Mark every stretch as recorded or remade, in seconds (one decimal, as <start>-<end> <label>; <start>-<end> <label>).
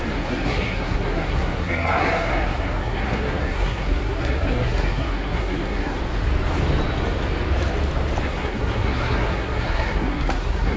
0.0-6.0 remade; 6.0-8.3 recorded; 8.3-10.8 remade